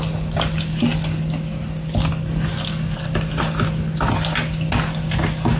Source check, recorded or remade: recorded